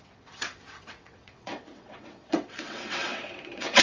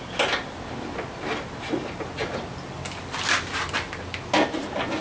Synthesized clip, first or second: first